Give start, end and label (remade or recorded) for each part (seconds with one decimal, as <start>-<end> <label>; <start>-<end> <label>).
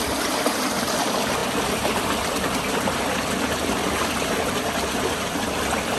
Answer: 0.0-6.0 recorded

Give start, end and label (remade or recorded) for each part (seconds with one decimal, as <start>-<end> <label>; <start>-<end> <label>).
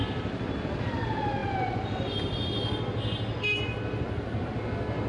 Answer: 0.0-5.1 recorded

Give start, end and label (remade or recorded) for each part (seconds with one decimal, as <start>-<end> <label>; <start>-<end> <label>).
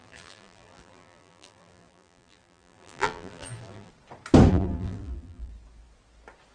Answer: 0.0-3.9 remade; 3.9-4.5 recorded; 4.5-5.5 remade; 5.5-6.5 recorded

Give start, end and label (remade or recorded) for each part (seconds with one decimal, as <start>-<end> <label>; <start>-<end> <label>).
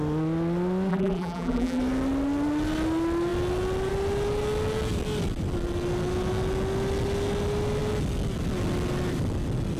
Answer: 0.0-0.9 recorded; 0.9-1.8 remade; 1.8-9.8 recorded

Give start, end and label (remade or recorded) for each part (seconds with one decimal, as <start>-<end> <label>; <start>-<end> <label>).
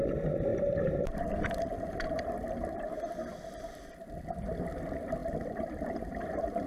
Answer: 0.0-0.5 recorded; 0.5-3.7 remade; 3.7-5.2 recorded; 5.2-6.7 remade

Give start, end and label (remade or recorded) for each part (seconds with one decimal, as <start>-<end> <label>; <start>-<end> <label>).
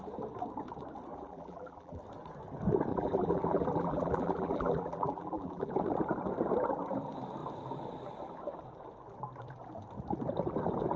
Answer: 0.0-1.1 recorded; 1.1-2.0 remade; 2.0-2.9 recorded; 2.9-5.7 remade; 5.7-11.0 recorded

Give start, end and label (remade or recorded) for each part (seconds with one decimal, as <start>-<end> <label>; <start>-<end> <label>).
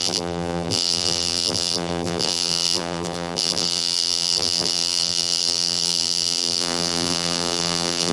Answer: 0.0-8.1 remade